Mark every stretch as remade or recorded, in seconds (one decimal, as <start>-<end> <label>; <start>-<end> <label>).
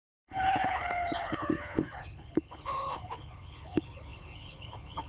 0.0-5.1 remade